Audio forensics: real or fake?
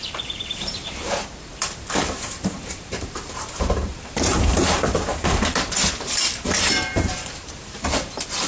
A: fake